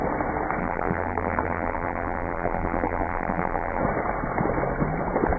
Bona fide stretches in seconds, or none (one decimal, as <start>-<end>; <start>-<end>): 0.0-0.6; 3.8-5.4